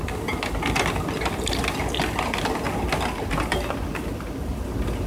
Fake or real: real